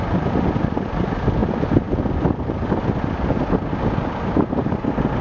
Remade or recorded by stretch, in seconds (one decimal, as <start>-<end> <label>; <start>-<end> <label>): 0.0-5.2 recorded